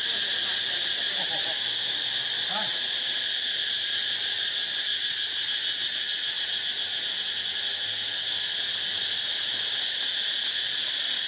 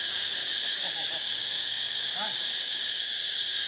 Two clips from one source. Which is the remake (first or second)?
second